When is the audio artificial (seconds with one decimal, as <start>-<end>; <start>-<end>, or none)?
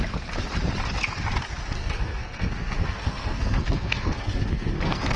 1.8-5.2